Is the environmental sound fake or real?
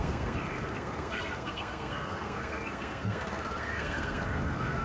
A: fake